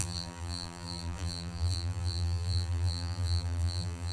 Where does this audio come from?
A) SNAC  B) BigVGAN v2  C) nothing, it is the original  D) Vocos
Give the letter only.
B